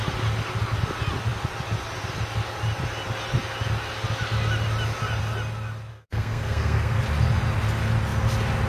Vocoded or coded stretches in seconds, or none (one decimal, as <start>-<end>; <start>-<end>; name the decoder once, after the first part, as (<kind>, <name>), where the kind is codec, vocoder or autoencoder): 5.9-7.0 (codec, SNAC)